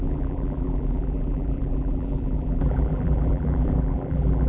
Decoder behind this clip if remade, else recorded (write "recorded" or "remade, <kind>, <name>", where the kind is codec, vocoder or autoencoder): remade, vocoder, BigVGAN v2